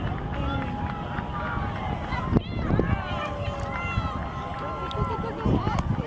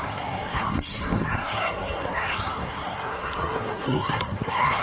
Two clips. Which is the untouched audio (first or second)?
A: first